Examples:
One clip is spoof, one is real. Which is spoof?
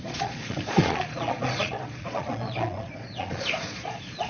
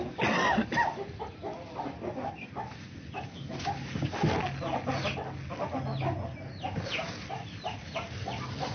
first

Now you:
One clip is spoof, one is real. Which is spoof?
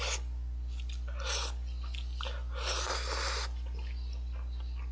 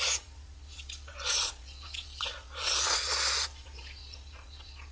second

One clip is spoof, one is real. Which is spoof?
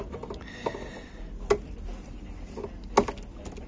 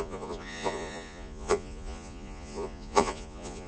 second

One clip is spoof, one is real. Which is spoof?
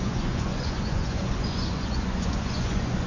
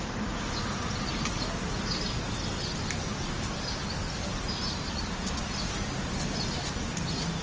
first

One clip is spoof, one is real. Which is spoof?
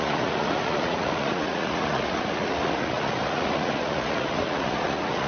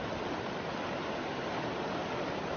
first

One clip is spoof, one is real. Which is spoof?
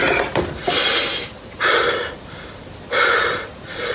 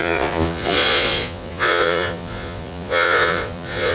second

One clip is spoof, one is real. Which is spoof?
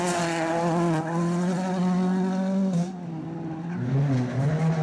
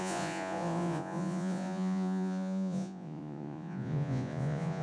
second